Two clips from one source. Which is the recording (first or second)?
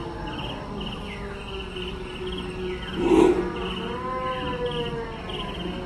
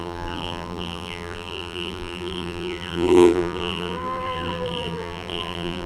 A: first